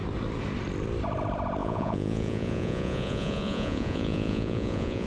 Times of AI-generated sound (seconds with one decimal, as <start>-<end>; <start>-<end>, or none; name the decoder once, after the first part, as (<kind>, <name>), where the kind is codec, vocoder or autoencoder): 1.6-5.1 (vocoder, Vocos)